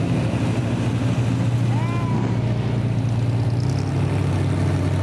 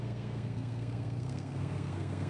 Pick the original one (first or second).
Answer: first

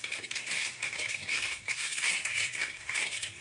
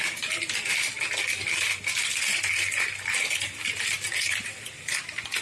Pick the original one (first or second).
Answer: second